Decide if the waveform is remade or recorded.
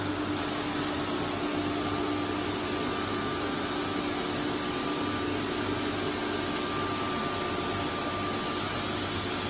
recorded